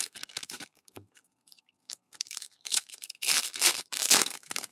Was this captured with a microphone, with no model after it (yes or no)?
no